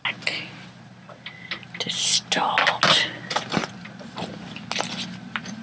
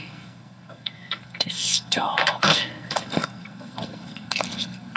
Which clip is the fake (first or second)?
second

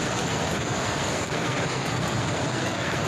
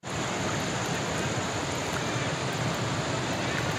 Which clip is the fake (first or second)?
first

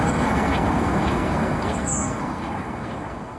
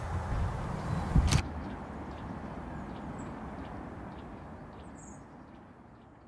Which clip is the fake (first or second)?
first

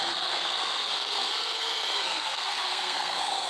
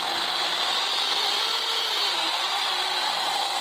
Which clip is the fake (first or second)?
first